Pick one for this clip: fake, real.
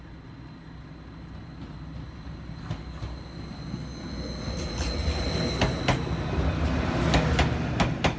real